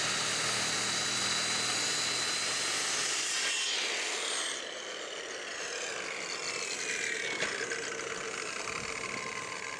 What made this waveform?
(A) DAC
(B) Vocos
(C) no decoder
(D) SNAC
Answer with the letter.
C